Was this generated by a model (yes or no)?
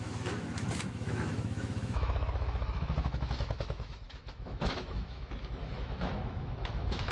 yes